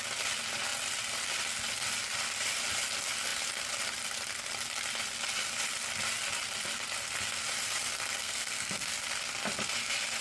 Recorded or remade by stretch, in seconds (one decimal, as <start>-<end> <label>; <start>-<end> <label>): 0.0-8.2 recorded; 8.2-8.8 remade; 8.8-10.2 recorded